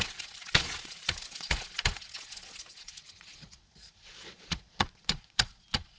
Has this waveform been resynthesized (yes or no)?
yes